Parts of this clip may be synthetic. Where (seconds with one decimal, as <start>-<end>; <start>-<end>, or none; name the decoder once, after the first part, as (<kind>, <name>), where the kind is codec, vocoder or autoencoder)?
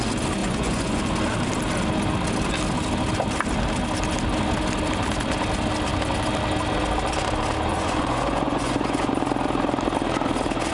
0.4-1.0 (vocoder, Vocos); 7.7-9.1